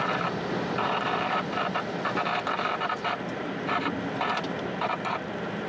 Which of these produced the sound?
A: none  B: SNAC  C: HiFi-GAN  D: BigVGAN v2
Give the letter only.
A